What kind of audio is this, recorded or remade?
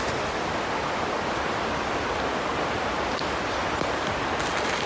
recorded